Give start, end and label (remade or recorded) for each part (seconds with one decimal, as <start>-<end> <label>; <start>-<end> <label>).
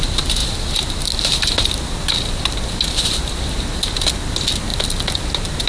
0.0-5.7 recorded